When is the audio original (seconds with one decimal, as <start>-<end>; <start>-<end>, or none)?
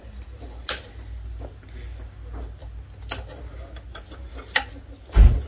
0.0-5.5